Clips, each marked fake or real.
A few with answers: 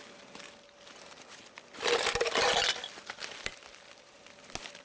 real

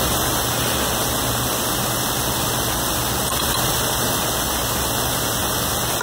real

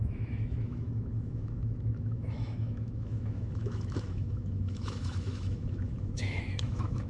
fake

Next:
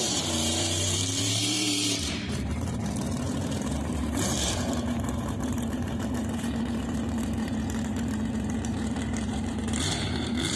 fake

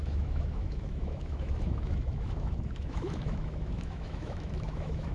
fake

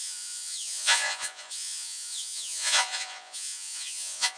fake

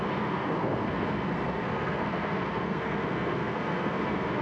fake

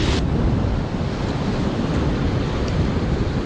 fake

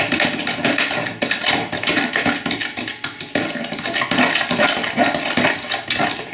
real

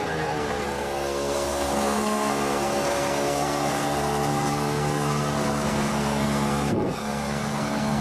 fake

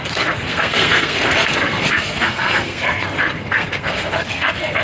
fake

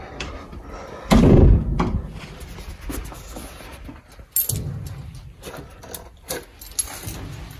real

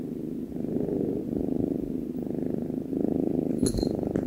real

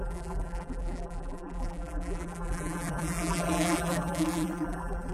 fake